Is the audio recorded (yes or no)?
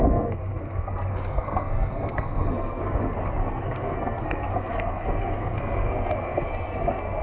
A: no